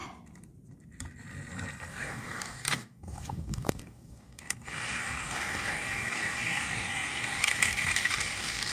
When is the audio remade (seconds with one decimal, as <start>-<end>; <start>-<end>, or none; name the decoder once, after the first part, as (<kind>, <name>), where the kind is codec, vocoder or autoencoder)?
1.9-8.7 (codec, DAC)